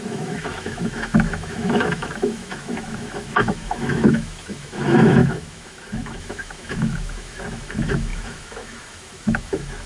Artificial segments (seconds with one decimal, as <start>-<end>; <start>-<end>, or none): 0.0-9.9